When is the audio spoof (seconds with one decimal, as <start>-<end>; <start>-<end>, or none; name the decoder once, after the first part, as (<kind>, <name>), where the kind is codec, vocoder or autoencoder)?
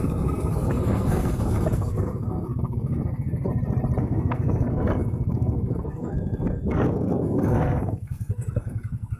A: 0.0-3.5 (codec, SNAC); 4.0-9.2